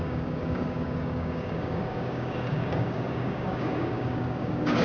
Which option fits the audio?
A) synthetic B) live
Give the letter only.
A